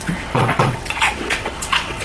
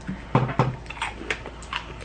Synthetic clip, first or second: first